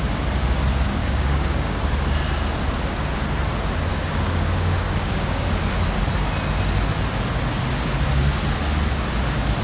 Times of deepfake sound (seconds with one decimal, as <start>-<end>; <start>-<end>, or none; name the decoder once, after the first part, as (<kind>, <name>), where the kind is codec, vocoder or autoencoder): 1.0-1.8 (codec, DAC); 3.9-5.6